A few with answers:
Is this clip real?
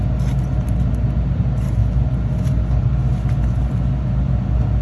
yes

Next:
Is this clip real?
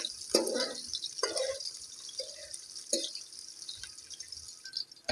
yes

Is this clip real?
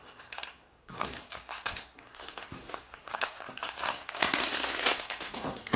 no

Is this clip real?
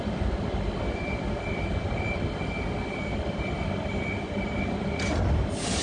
yes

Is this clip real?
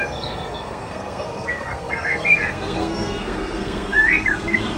no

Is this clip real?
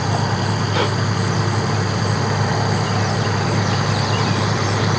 yes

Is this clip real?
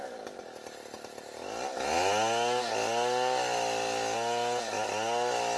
yes